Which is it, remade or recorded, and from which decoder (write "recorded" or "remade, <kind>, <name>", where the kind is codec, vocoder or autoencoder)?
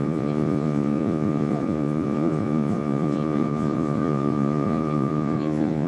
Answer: remade, vocoder, Vocos